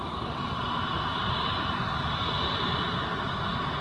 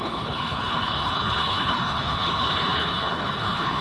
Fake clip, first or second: second